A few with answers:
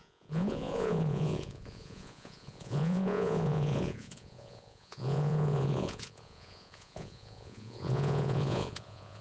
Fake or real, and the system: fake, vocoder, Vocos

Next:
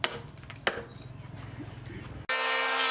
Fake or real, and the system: real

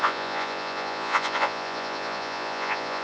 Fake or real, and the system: fake, vocoder, Vocos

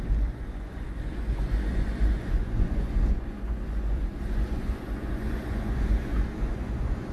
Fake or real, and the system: fake, vocoder, Vocos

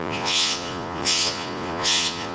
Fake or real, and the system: fake, vocoder, Vocos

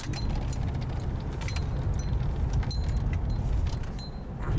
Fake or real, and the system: real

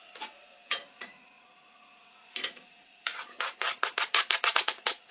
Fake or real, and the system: fake, vocoder, Vocos